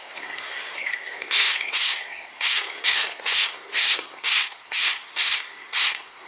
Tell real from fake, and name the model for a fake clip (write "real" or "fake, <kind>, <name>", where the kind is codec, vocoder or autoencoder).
fake, codec, SNAC